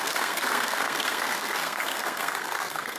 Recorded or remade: remade